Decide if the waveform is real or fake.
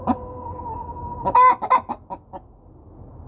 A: real